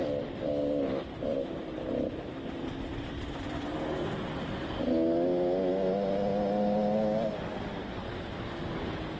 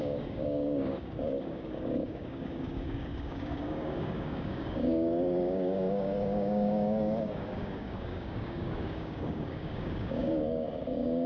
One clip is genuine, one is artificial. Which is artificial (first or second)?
second